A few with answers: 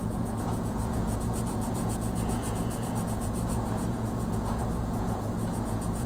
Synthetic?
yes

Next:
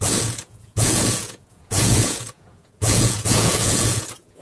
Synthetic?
yes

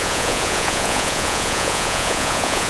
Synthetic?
yes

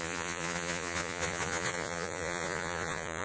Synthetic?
yes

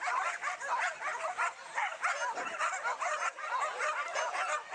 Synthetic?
no